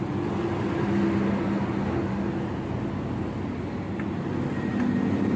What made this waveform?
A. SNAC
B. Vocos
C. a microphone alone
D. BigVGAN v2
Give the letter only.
C